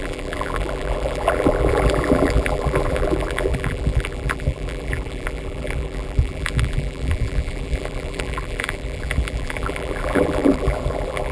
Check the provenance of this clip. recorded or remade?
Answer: remade